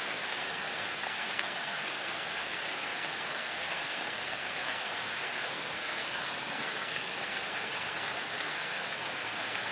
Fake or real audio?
fake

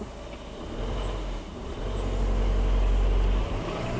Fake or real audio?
real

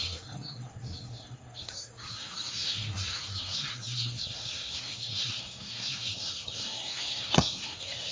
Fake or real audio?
fake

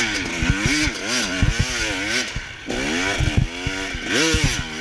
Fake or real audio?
real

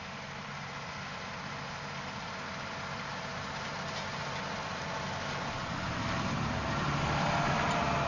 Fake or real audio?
real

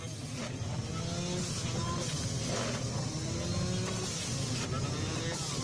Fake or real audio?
real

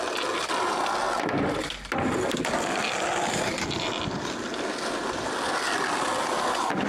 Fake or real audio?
real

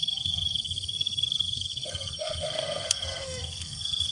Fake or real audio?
fake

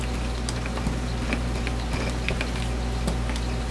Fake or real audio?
real